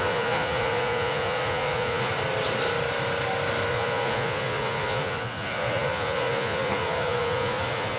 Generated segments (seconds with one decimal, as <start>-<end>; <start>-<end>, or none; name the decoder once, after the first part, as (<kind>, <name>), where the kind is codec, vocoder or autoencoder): 0.0-2.1 (vocoder, Vocos); 3.7-8.0